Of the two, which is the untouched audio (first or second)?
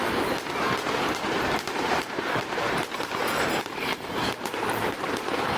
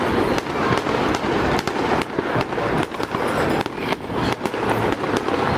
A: second